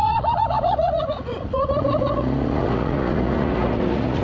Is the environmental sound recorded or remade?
remade